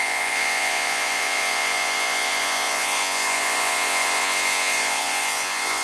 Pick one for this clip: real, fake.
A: fake